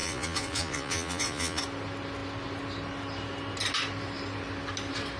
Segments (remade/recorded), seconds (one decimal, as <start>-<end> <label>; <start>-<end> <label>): 0.0-1.6 remade; 1.6-5.2 recorded